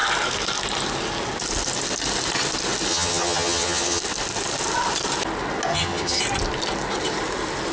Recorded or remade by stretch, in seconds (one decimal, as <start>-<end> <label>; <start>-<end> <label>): 0.0-2.9 recorded; 2.9-4.0 remade; 4.0-5.7 recorded; 5.7-6.2 remade; 6.2-7.7 recorded